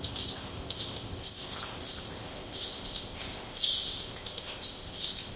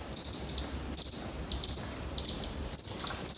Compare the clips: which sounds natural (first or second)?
second